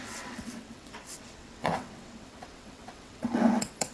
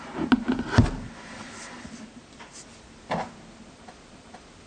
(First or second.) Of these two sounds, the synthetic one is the first